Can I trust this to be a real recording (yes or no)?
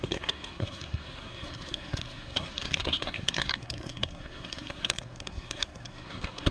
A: no